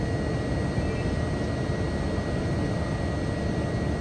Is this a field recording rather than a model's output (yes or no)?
yes